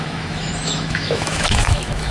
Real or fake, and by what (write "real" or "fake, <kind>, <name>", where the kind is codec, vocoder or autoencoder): fake, autoencoder, DAC-VAE